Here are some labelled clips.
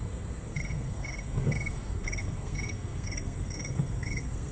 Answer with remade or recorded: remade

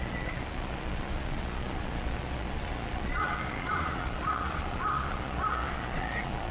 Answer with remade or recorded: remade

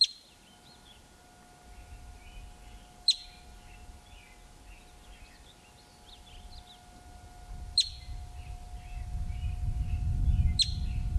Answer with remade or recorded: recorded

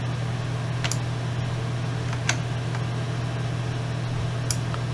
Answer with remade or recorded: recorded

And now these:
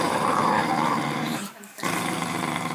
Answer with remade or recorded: remade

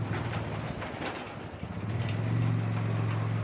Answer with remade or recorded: recorded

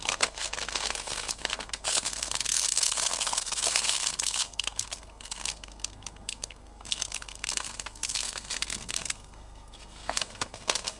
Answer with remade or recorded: remade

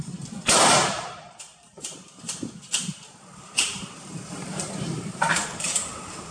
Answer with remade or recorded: remade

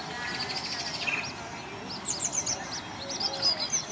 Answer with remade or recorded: recorded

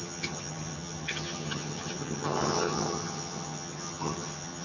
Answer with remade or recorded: remade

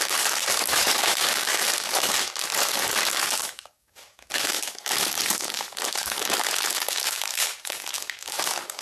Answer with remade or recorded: remade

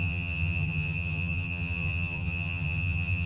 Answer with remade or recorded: remade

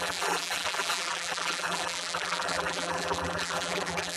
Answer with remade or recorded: remade